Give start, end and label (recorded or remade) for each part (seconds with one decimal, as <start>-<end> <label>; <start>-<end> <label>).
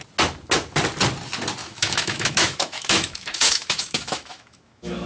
0.0-1.6 recorded; 1.6-5.1 remade